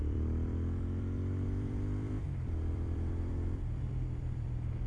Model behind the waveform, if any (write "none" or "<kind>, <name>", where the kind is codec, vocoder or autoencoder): vocoder, BigVGAN v2